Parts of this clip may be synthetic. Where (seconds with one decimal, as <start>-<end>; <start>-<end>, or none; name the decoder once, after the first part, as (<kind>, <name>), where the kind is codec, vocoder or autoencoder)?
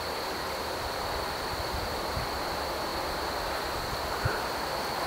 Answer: none